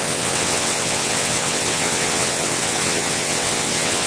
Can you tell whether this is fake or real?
fake